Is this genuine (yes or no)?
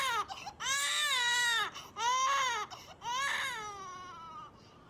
yes